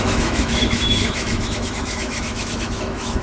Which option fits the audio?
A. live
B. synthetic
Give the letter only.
B